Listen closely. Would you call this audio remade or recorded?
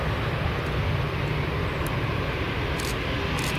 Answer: recorded